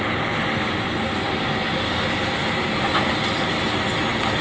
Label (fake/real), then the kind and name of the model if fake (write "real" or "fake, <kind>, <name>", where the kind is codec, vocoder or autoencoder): real